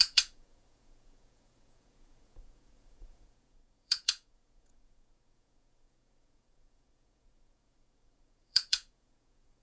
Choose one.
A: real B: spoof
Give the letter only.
B